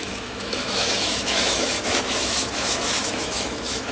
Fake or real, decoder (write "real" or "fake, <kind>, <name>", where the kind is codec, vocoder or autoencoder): fake, autoencoder, DAC-VAE